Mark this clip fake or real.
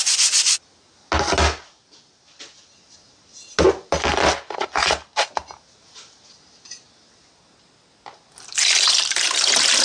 real